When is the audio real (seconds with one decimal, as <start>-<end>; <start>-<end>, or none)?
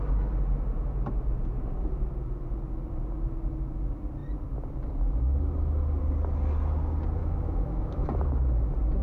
0.0-7.2; 8.1-9.0